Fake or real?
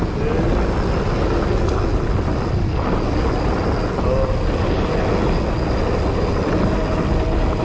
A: real